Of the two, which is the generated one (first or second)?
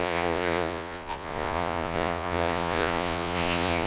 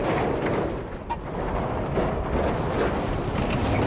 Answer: first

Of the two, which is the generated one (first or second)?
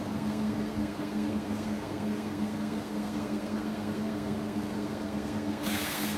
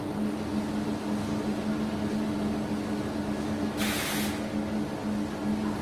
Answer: first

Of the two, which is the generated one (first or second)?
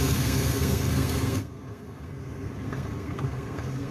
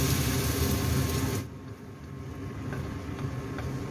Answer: first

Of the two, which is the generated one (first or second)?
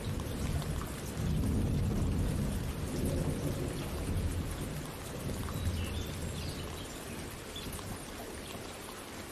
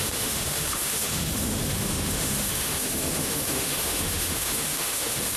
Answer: second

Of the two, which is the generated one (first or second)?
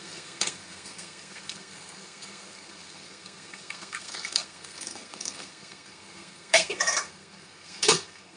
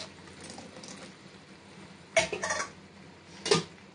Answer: first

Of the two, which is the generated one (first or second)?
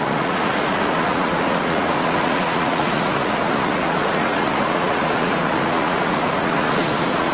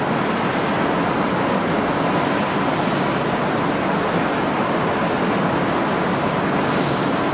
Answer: first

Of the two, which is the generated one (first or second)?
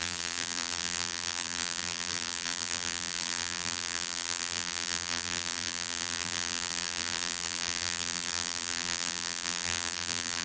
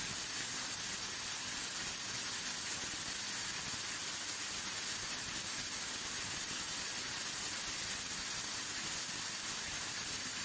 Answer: first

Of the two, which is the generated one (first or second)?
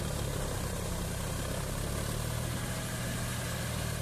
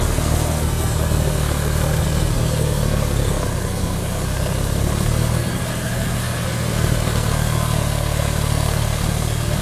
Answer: second